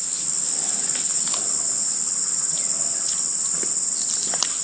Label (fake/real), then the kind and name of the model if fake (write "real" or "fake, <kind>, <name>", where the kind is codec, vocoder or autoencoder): real